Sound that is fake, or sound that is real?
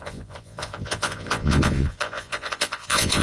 fake